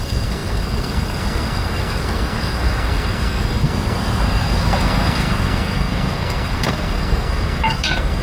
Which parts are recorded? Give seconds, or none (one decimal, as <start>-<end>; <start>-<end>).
none